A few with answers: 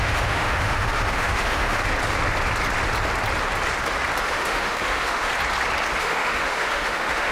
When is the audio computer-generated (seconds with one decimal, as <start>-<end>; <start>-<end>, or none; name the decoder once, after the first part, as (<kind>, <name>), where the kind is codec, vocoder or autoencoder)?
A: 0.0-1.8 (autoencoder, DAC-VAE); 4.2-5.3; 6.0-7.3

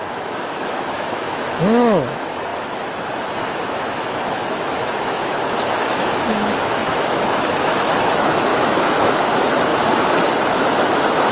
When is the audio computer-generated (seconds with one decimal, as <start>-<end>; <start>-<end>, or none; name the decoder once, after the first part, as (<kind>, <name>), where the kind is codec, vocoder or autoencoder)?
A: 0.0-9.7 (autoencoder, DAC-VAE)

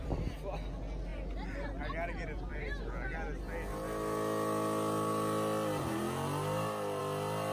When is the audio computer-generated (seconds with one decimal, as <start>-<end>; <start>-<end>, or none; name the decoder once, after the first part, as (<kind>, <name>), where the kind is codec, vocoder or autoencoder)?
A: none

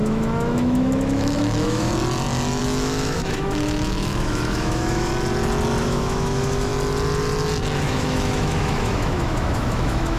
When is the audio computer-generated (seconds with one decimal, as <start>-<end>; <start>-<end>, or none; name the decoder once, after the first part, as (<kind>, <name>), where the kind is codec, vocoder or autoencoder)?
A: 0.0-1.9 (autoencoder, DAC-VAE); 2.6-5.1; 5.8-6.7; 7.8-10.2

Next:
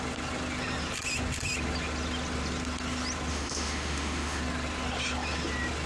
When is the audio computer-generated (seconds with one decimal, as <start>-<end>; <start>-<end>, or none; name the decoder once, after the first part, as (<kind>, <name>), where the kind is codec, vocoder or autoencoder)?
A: 3.3-4.4 (autoencoder, DAC-VAE)

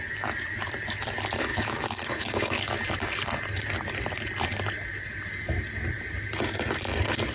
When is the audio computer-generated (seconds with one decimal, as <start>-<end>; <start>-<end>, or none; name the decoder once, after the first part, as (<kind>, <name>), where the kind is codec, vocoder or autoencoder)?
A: 1.5-2.8 (autoencoder, DAC-VAE)